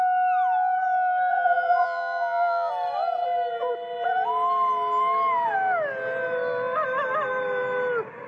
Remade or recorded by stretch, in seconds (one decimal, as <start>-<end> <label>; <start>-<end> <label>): 0.0-1.3 recorded; 1.3-2.7 remade; 2.7-8.3 recorded